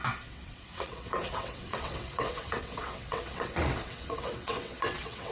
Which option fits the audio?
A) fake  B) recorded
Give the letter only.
A